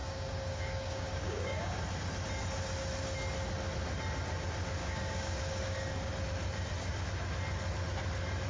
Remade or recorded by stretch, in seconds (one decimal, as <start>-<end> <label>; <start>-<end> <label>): 0.0-1.8 remade; 1.8-4.8 recorded; 4.8-6.1 remade; 6.1-8.5 recorded